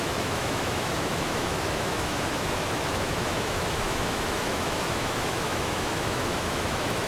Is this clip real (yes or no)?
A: no